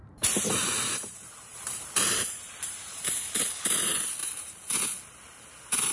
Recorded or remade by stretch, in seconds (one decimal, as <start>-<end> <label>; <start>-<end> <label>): 0.0-3.5 remade; 3.5-4.2 recorded; 4.2-4.8 remade; 4.8-5.9 recorded